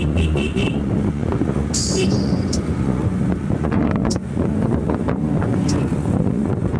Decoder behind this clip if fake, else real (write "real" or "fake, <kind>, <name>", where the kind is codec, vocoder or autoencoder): fake, vocoder, Vocos